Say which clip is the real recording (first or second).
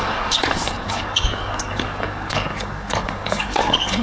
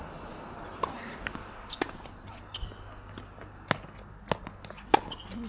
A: second